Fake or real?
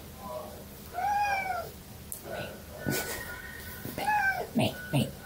real